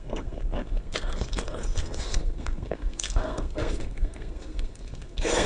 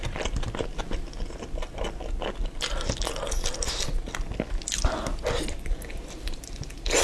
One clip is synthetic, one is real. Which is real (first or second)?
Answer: second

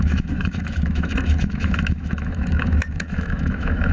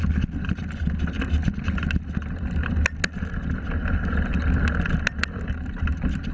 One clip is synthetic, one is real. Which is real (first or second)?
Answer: second